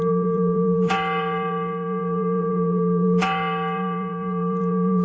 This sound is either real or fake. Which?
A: fake